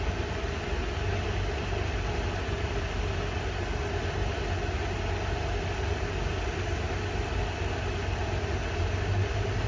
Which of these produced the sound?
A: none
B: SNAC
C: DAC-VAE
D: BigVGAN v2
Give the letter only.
A